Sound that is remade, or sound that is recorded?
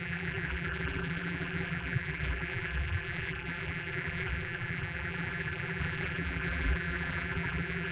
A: remade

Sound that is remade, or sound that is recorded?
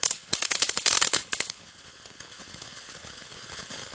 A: remade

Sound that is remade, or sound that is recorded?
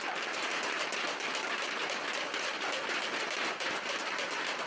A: recorded